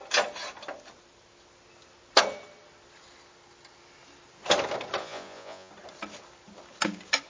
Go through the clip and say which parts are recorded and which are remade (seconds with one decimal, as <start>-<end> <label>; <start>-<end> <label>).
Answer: 0.0-5.0 recorded; 5.0-5.7 remade; 5.7-7.3 recorded